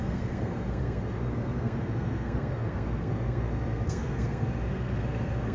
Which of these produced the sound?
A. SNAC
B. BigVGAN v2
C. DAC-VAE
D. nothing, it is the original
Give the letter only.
A